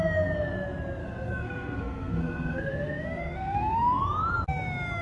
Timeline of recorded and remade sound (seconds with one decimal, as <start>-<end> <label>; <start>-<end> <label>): 0.0-1.0 recorded; 1.0-4.0 remade; 4.0-5.0 recorded